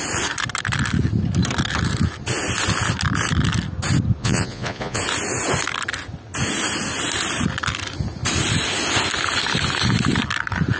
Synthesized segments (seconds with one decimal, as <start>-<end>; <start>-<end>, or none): 4.2-5.0